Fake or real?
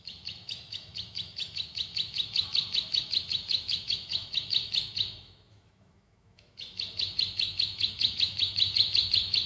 fake